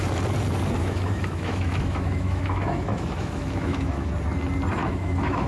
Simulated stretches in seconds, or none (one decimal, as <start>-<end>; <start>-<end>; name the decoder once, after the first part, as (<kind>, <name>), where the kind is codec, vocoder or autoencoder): 0.8-4.1 (autoencoder, DAC-VAE); 4.8-5.5